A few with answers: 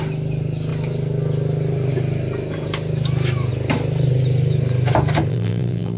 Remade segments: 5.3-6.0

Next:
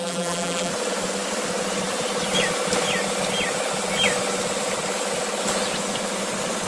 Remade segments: 0.0-0.7

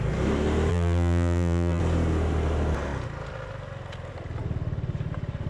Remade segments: 0.7-1.8